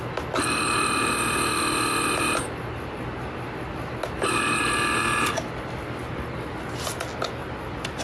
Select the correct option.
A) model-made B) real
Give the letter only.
B